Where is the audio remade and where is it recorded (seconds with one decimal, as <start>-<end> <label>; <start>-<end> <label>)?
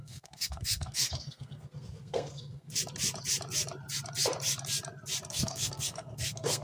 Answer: 0.0-2.7 remade; 2.7-5.3 recorded; 5.3-6.6 remade